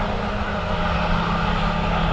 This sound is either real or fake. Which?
real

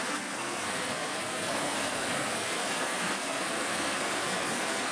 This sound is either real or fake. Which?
fake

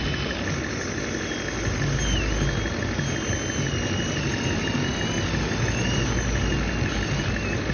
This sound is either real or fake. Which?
real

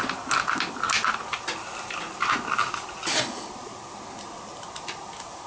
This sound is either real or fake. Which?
real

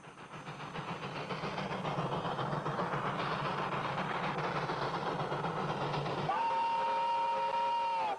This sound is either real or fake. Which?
real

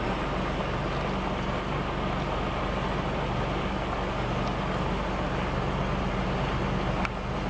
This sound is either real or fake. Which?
real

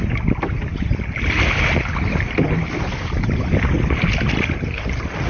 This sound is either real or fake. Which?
real